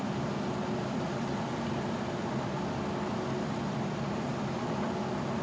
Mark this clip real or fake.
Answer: real